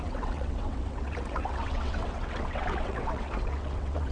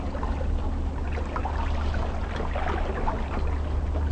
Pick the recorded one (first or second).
second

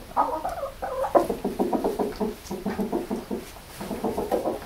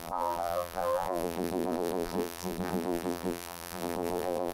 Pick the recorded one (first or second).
first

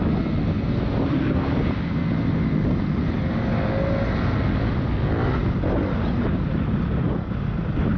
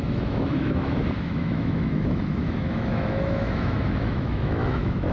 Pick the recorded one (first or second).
first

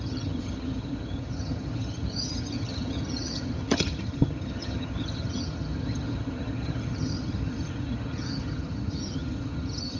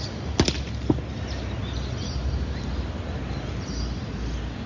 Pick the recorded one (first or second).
second